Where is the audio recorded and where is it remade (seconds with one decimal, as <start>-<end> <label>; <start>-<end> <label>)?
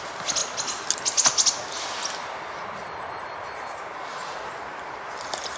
0.0-5.6 recorded